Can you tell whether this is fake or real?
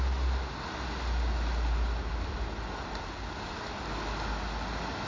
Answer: real